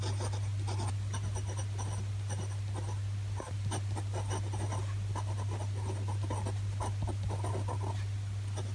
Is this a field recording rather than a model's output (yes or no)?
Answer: yes